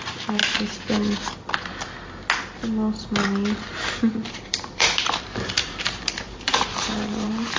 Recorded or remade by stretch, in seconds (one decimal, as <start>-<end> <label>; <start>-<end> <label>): 0.0-0.4 remade; 0.4-4.1 recorded; 4.1-7.6 remade